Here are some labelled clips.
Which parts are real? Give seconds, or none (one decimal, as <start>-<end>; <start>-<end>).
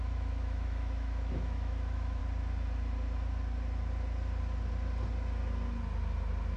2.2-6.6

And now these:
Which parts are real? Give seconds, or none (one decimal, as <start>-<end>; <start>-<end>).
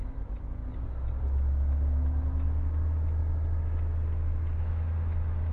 0.6-1.2; 3.2-4.6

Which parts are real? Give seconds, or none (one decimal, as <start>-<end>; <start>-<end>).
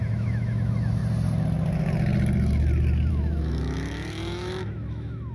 1.0-3.1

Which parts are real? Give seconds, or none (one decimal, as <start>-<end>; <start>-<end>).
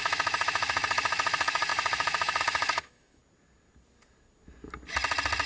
3.2-5.5